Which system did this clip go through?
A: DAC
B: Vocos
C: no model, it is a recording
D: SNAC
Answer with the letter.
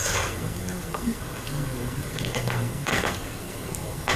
D